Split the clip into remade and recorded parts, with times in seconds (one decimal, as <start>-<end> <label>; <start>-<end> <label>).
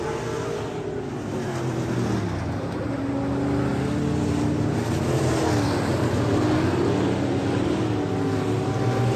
0.0-9.2 recorded